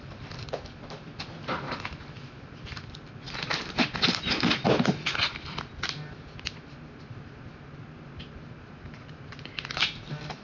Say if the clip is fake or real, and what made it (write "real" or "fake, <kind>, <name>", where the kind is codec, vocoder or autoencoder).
real